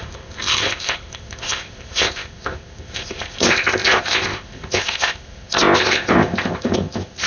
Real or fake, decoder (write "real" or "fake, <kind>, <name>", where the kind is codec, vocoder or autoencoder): fake, codec, ZipCodec